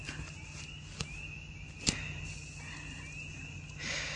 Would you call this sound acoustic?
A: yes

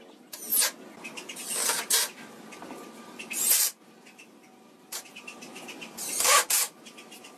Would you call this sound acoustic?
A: yes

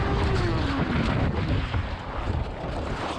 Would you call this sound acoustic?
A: yes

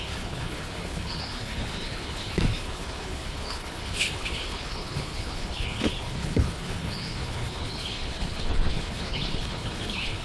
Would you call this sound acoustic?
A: no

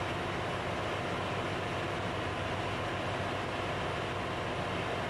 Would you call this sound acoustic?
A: yes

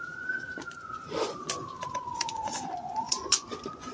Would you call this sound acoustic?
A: no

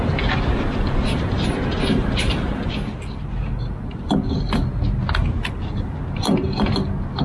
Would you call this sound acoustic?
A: yes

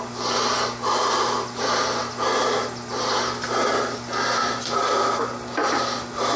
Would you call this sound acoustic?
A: yes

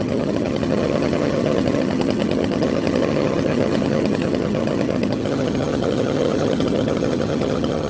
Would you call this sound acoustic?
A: no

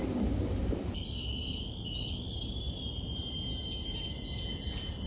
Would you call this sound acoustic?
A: yes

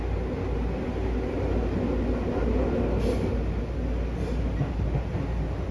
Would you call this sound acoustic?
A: yes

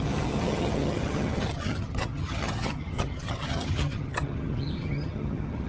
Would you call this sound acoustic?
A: no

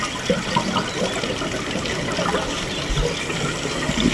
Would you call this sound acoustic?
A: yes